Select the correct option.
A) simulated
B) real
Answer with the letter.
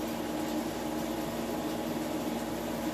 B